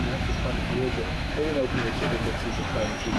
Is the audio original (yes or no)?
no